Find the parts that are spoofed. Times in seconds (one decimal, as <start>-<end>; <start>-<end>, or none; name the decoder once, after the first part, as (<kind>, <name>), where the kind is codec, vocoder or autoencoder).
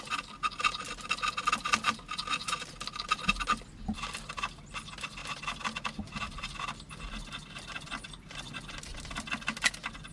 none